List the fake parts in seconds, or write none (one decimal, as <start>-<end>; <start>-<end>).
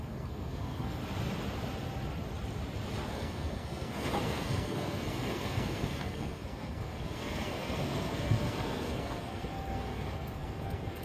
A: 0.0-1.0; 3.1-11.0